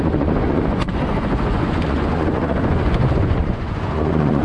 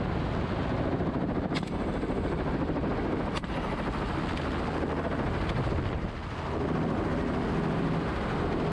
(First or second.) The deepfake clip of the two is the first